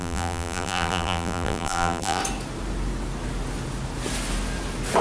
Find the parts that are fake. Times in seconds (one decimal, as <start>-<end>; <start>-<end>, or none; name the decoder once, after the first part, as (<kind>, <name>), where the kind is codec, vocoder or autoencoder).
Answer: 0.0-2.2 (vocoder, BigVGAN v2)